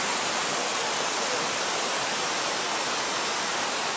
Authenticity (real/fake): real